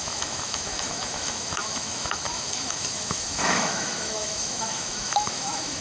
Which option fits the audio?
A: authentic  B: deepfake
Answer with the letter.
B